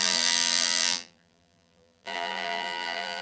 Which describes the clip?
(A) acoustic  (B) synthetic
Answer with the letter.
B